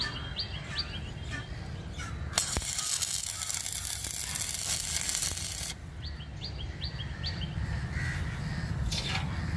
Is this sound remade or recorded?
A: recorded